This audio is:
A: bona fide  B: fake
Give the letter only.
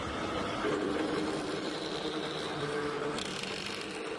B